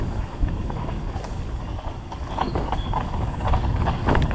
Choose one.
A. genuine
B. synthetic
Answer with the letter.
B